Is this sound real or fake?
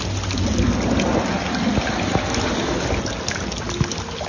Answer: real